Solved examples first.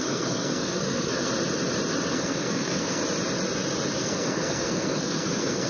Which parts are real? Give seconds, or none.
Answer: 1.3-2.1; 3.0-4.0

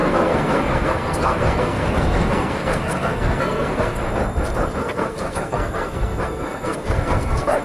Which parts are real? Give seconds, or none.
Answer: 4.0-4.8

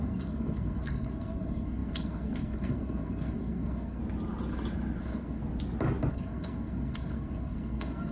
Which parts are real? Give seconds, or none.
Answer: 4.0-5.0; 5.4-6.1

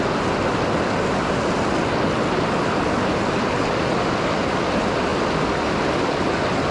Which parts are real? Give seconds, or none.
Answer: 0.0-6.7